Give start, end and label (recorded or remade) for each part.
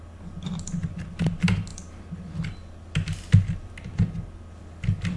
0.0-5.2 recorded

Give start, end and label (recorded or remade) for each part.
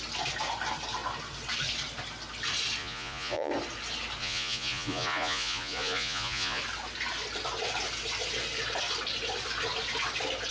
0.0-2.8 recorded; 2.8-3.5 remade; 3.5-4.2 recorded; 4.2-6.6 remade; 6.6-10.5 recorded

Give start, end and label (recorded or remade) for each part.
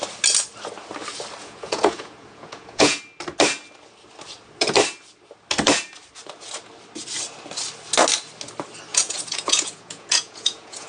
0.0-1.4 recorded; 1.4-3.0 remade; 3.0-8.9 recorded; 8.9-10.9 remade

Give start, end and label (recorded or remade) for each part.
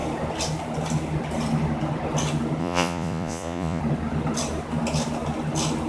0.0-2.6 recorded; 2.6-3.8 remade; 3.8-5.9 recorded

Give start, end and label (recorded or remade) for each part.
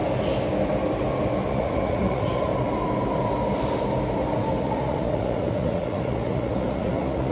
0.0-1.5 recorded; 1.5-2.5 remade; 2.5-4.6 recorded; 4.6-7.3 remade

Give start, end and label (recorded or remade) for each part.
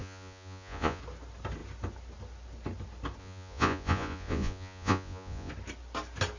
0.0-1.0 remade; 1.0-3.2 recorded; 3.2-5.5 remade; 5.5-6.4 recorded